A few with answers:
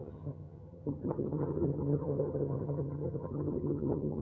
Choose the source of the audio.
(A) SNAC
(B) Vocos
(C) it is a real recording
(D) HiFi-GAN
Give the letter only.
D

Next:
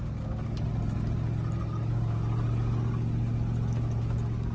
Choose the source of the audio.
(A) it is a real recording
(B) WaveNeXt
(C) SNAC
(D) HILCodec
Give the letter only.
A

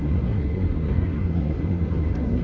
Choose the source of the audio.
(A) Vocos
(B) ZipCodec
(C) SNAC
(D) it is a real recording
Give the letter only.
C